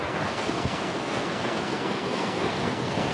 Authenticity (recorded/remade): remade